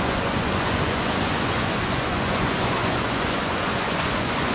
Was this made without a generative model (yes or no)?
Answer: no